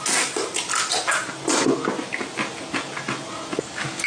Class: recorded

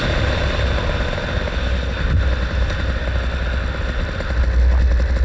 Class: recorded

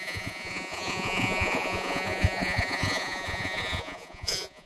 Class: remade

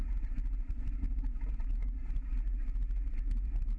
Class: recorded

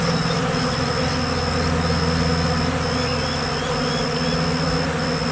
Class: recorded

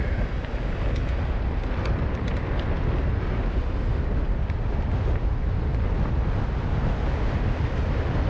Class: recorded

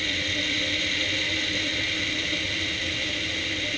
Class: recorded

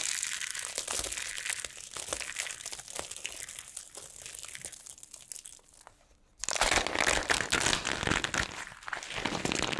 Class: recorded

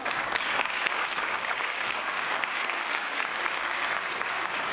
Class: remade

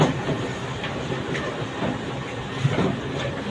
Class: recorded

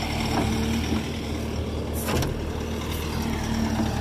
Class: recorded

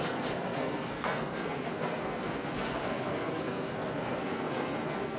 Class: remade